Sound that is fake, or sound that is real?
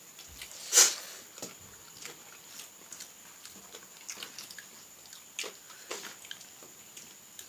real